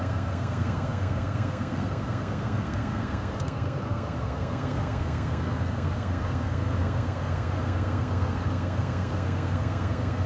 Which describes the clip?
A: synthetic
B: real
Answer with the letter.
A